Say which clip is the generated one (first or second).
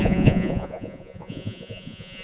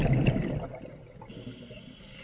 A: first